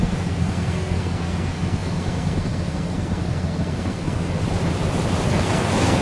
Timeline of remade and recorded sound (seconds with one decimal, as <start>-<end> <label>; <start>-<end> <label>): 0.0-4.4 remade; 4.4-5.3 recorded; 5.3-6.0 remade